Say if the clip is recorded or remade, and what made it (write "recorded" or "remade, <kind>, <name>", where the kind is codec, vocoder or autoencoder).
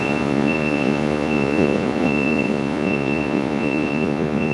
remade, vocoder, Vocos